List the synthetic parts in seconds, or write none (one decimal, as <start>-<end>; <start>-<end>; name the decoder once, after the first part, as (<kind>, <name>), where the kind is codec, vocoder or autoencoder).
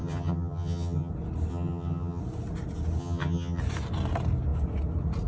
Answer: 0.0-1.1 (vocoder, HiFi-GAN); 1.5-2.2; 3.0-3.6